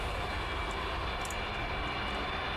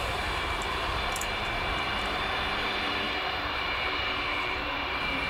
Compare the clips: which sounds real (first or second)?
first